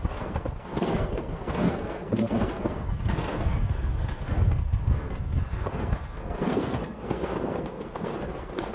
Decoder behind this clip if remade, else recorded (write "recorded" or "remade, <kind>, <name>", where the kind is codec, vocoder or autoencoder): remade, codec, SNAC